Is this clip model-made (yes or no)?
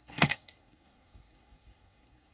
yes